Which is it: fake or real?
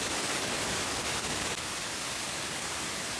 fake